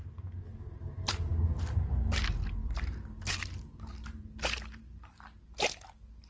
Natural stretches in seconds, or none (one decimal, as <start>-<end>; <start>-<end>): 0.0-6.3